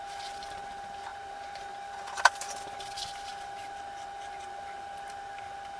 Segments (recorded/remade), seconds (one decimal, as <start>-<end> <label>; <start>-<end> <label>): 0.0-1.1 recorded; 1.1-1.6 remade; 1.6-5.8 recorded